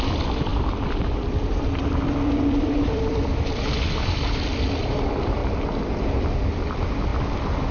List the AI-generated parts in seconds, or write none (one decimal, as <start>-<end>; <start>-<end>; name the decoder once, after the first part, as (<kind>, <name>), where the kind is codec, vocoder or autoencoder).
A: 0.0-5.4 (vocoder, BigVGAN v2); 6.5-7.1